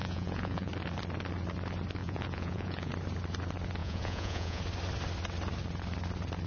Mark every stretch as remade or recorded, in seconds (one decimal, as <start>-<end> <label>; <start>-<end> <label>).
0.0-0.7 remade; 0.7-2.0 recorded; 2.0-2.9 remade; 2.9-3.8 recorded; 3.8-4.6 remade; 4.6-6.5 recorded